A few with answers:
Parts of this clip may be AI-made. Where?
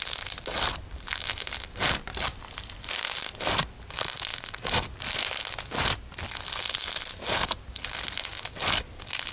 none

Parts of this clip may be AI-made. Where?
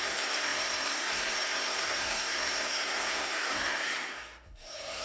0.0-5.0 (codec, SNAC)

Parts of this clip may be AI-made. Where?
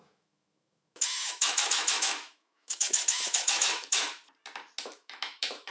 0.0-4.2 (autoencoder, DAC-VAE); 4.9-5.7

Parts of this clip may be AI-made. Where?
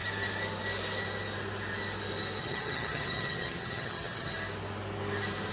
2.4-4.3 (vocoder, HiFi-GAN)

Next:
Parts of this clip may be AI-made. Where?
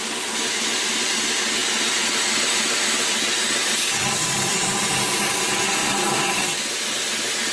1.6-4.8 (vocoder, BigVGAN v2); 5.8-6.9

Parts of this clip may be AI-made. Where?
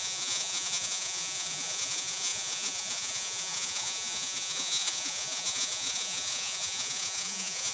0.0-7.7 (vocoder, Vocos)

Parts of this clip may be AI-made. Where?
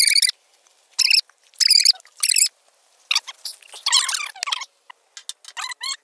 none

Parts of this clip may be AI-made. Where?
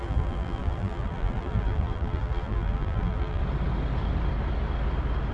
0.0-3.4 (vocoder, BigVGAN v2)